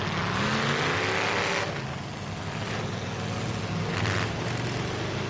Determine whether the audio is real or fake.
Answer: real